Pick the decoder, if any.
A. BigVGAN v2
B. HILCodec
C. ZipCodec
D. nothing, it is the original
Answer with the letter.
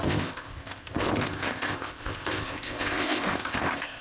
C